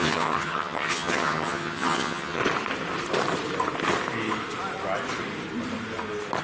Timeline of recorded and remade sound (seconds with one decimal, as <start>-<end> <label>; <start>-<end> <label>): 0.0-2.4 remade; 2.4-6.4 recorded